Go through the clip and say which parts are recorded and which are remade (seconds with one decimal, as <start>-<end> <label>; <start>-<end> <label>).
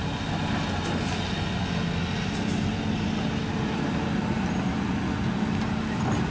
0.0-6.3 recorded